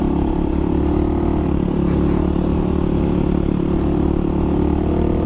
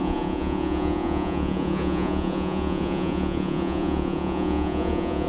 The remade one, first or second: second